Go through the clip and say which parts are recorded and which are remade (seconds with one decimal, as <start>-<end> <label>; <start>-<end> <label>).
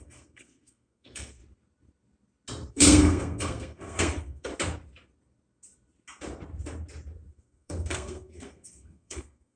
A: 0.0-1.4 remade; 1.4-2.7 recorded; 2.7-4.5 remade; 4.5-7.3 recorded; 7.3-9.6 remade